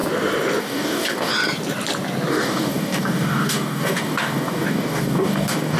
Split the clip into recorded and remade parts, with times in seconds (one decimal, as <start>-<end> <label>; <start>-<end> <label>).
0.0-0.6 recorded; 0.6-1.3 remade; 1.3-2.3 recorded; 2.3-5.8 remade